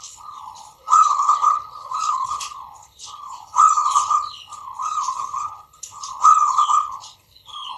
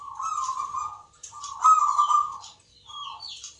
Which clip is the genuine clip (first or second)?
second